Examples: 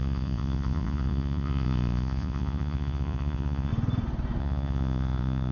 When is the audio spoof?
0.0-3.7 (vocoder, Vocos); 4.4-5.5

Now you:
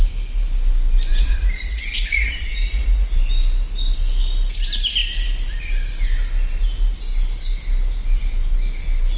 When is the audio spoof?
1.1-3.2 (vocoder, Vocos)

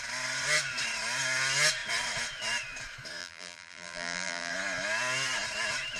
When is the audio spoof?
3.2-4.5 (vocoder, BigVGAN v2)

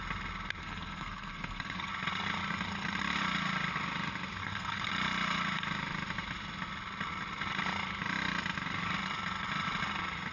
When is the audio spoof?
0.6-1.9 (codec, SNAC); 4.4-4.9

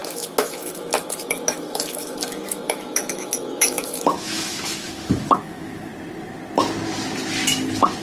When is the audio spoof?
0.0-5.9 (autoencoder, DAC-VAE)

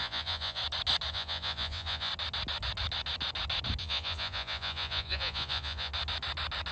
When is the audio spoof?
0.0-0.6 (vocoder, Vocos); 1.1-2.1; 3.8-5.9

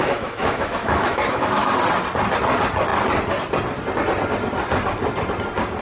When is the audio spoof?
0.0-1.7 (autoencoder, DAC-VAE)

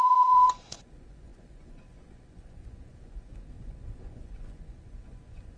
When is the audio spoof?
0.0-5.6 (vocoder, Vocos)